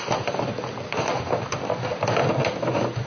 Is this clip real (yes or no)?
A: yes